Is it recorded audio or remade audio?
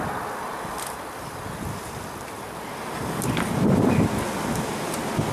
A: recorded